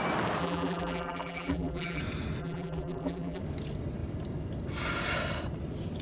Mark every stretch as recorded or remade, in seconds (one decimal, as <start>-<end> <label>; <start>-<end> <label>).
0.0-0.4 recorded; 0.4-2.0 remade; 2.0-2.4 recorded; 2.4-3.4 remade; 3.4-6.0 recorded